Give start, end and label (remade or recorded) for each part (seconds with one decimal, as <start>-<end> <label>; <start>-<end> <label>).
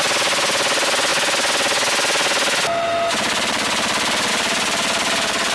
0.0-5.5 recorded